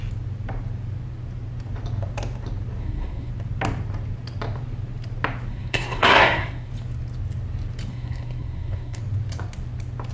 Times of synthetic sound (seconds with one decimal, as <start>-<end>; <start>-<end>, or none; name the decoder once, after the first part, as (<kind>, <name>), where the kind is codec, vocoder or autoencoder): 2.8-3.3 (codec, SNAC); 5.5-6.7; 7.9-9.0